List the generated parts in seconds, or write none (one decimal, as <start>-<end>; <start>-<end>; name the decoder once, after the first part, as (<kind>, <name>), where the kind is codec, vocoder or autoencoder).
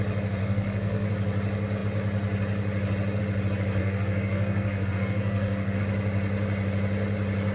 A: 0.4-1.1 (codec, SNAC); 3.8-5.8